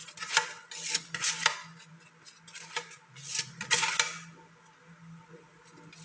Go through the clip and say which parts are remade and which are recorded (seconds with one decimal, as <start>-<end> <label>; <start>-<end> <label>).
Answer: 0.0-6.0 recorded